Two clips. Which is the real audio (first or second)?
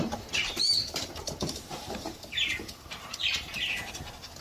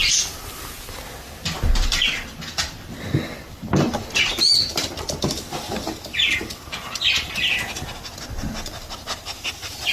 second